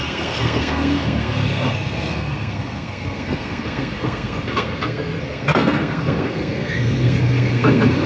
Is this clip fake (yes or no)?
yes